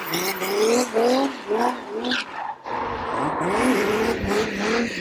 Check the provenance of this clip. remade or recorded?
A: recorded